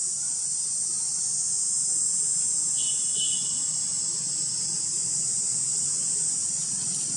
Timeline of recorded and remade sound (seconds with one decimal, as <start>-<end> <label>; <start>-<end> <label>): 0.0-0.4 recorded; 0.4-1.2 remade; 1.2-5.7 recorded; 5.7-7.2 remade